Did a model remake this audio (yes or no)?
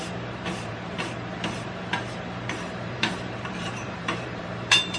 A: yes